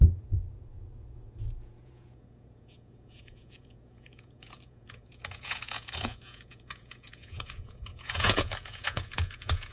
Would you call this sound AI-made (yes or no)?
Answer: yes